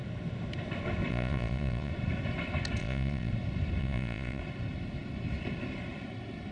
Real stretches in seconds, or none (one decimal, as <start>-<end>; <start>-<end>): 0.0-1.1; 1.9-2.8; 3.3-3.8; 4.4-6.5